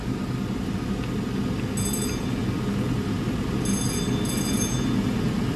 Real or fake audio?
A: real